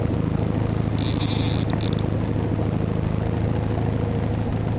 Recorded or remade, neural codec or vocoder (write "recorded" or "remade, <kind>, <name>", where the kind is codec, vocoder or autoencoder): recorded